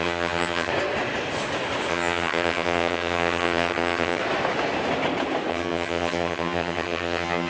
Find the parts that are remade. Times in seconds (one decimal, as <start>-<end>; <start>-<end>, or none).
0.0-0.7; 1.9-4.2; 5.5-7.5